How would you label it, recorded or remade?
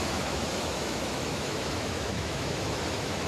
remade